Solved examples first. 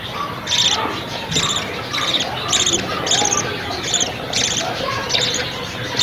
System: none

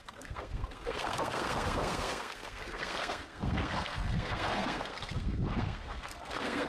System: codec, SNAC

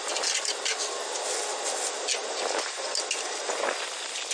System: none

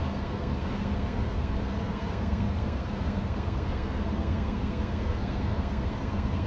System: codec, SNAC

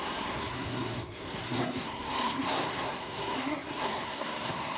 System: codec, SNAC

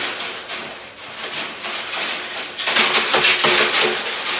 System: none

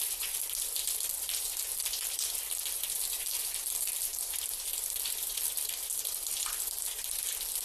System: none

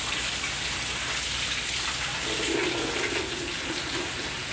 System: none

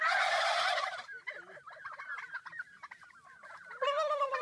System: none